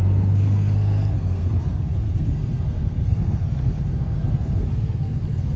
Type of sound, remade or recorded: remade